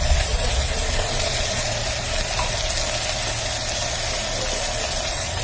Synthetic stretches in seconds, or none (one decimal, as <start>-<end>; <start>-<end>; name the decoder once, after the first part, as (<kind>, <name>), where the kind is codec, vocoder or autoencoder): 0.0-1.8 (vocoder, Vocos); 4.9-5.4